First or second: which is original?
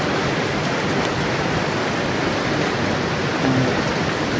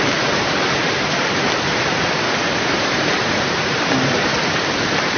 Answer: first